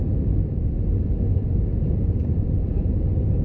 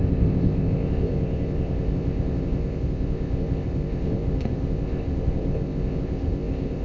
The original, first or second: first